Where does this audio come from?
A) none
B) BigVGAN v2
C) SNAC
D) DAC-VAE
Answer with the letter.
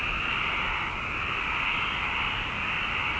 A